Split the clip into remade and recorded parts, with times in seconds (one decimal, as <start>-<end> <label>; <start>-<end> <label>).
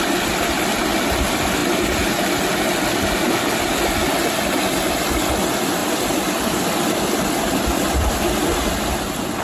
0.0-9.4 recorded